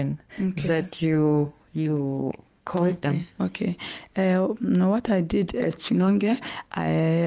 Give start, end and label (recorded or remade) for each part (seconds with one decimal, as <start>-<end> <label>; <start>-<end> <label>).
0.0-0.6 recorded; 0.6-3.4 remade; 3.4-5.6 recorded; 5.6-6.5 remade; 6.5-7.3 recorded